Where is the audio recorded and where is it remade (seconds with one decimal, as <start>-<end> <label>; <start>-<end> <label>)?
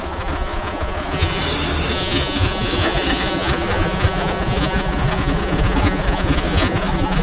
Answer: 0.0-1.4 remade; 1.4-1.9 recorded; 1.9-7.2 remade